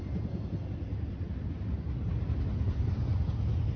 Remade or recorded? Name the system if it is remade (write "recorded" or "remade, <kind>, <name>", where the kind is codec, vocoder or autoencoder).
recorded